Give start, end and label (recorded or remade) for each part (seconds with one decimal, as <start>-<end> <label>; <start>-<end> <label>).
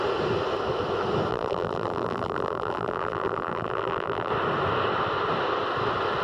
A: 0.0-1.3 recorded; 1.3-4.3 remade; 4.3-6.2 recorded